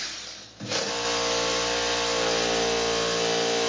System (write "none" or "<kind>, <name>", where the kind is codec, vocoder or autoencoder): none